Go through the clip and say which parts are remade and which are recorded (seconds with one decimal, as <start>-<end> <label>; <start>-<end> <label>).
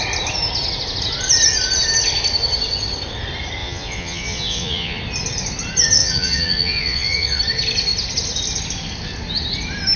0.0-3.6 recorded; 3.6-5.0 remade; 5.0-6.0 recorded; 6.0-7.4 remade; 7.4-10.0 recorded